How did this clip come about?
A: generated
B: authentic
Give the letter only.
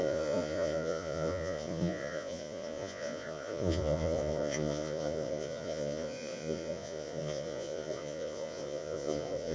A